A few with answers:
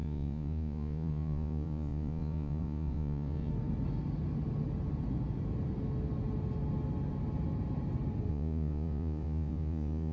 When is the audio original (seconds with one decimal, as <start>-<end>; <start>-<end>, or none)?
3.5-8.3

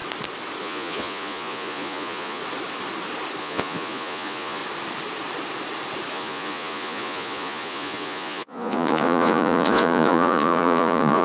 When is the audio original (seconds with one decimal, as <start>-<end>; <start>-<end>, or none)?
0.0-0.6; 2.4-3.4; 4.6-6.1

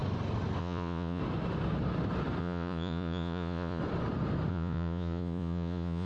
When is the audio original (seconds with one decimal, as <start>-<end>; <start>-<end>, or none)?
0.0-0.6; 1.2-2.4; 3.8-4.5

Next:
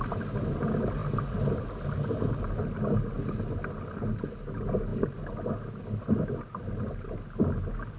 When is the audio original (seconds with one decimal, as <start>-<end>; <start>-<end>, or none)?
0.0-8.0

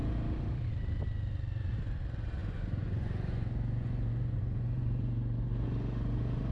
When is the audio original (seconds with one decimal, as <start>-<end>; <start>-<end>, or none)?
0.0-2.4

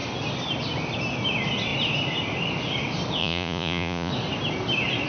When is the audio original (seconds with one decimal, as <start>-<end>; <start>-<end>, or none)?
0.0-3.2; 4.1-5.1

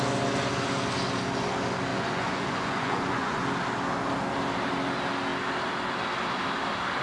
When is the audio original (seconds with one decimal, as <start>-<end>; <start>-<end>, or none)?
0.0-1.9; 3.4-7.0

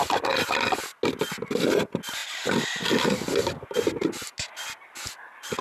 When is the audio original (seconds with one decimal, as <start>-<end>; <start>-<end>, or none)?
0.0-5.6